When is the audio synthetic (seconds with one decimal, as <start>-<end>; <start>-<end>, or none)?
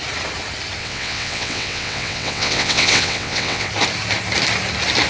0.8-3.7